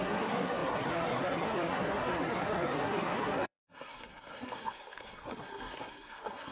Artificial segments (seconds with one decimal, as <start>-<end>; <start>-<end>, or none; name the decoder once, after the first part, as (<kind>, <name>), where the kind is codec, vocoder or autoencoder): 0.0-6.5 (codec, SNAC)